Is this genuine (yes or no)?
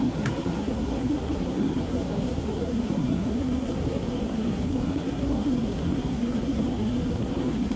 no